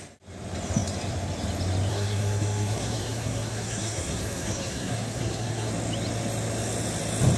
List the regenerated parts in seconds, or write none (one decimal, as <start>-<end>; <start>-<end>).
1.9-5.7